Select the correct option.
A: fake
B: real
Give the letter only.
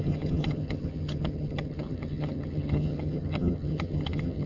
A